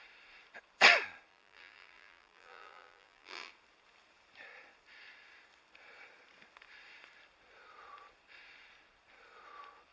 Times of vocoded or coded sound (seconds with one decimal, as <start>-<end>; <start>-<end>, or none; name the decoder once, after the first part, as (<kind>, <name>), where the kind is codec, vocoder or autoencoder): 1.3-3.5 (vocoder, BigVGAN v2)